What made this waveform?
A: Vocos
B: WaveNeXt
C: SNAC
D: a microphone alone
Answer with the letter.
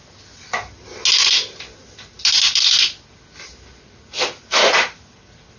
D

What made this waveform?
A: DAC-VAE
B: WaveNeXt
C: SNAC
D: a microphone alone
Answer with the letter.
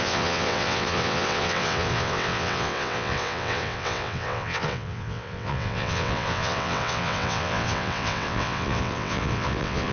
B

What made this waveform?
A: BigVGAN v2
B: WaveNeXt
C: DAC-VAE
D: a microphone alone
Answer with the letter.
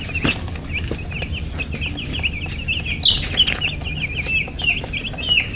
D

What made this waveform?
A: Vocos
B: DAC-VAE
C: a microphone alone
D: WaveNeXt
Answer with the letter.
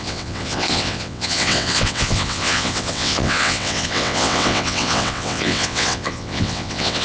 D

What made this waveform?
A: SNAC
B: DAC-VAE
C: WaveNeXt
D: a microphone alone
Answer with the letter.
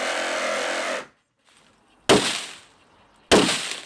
D